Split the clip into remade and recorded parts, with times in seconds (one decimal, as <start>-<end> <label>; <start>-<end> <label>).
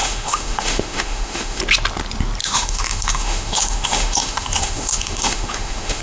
0.0-1.6 remade; 1.6-2.4 recorded; 2.4-6.0 remade